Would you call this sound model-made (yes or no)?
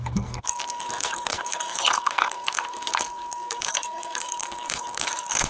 yes